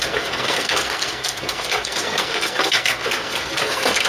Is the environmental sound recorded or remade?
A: remade